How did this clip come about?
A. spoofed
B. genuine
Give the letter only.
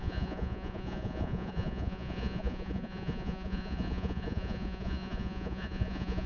A